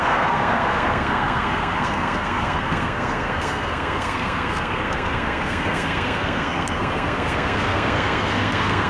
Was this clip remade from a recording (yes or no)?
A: yes